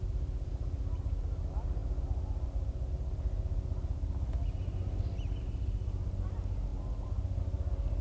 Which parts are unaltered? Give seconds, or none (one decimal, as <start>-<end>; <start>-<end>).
0.0-8.0